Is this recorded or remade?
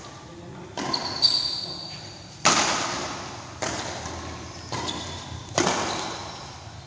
recorded